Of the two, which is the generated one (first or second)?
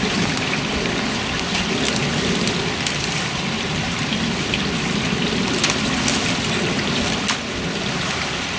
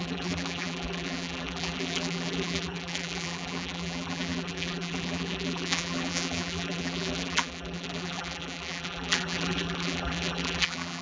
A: second